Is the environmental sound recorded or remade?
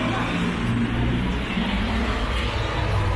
recorded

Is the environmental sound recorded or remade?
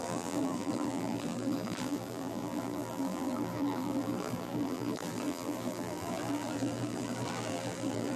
remade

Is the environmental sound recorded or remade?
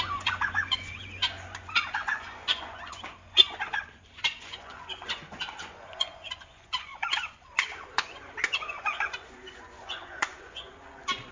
remade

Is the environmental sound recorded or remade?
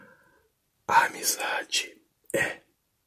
recorded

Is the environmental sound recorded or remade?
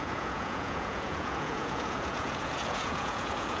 remade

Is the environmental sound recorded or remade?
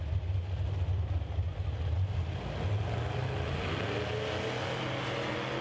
recorded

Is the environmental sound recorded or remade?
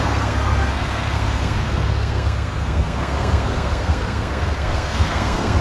remade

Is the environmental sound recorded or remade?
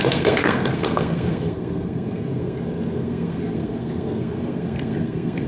remade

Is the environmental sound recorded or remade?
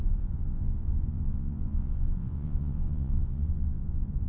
remade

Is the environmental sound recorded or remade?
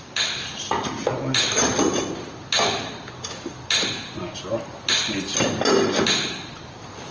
recorded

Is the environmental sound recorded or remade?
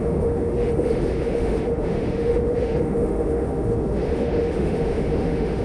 remade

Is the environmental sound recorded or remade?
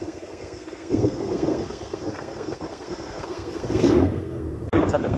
remade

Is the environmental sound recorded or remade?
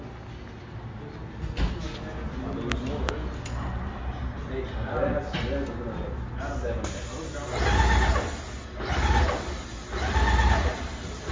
recorded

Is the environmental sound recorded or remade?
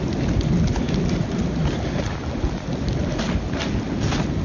recorded